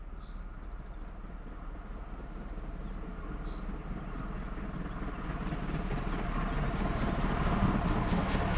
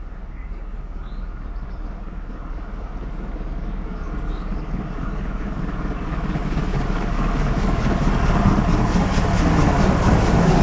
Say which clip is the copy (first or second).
second